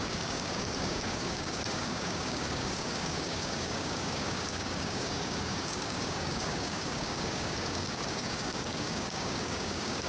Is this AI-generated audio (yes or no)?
yes